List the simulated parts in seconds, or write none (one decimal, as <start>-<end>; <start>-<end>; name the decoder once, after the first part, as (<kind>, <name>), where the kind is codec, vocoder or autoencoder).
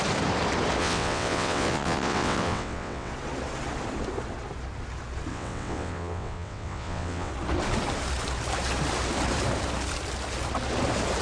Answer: 0.8-3.1 (vocoder, WaveNeXt); 5.3-7.3